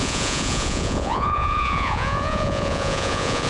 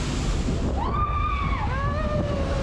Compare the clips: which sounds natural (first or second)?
second